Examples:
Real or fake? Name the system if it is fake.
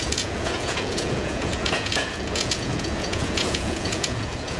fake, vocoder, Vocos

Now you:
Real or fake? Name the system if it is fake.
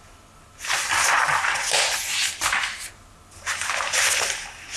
real